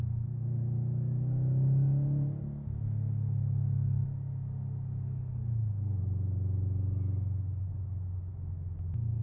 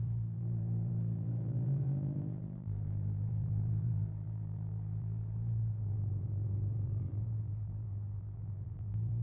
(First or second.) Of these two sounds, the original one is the first